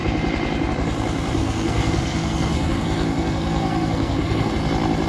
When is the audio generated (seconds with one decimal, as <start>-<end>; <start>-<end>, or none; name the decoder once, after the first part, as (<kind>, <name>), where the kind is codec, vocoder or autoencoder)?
1.4-4.5 (codec, SNAC)